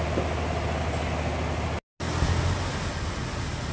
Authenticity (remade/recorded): recorded